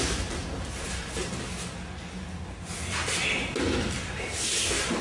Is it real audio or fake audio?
real